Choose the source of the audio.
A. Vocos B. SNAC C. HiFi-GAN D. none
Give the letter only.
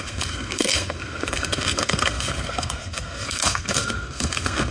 B